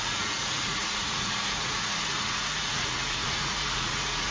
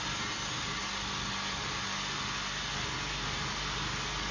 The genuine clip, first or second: second